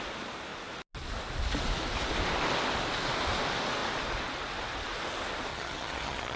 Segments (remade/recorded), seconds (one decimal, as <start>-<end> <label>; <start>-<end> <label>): 0.0-5.5 recorded; 5.5-6.4 remade